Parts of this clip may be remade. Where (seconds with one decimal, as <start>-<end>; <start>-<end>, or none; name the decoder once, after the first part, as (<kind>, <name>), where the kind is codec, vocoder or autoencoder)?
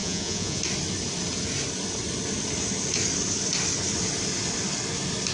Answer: 0.0-0.6 (vocoder, Vocos)